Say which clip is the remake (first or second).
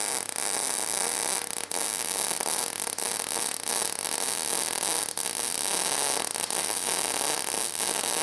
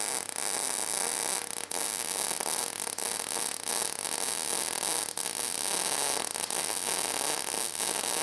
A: first